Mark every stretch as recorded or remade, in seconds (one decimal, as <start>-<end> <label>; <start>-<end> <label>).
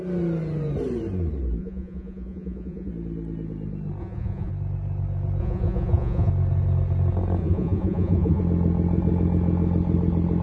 0.0-1.6 recorded; 1.6-2.9 remade; 2.9-4.0 recorded; 4.0-4.5 remade; 4.5-5.4 recorded; 5.4-6.3 remade; 6.3-7.4 recorded; 7.4-8.4 remade; 8.4-10.4 recorded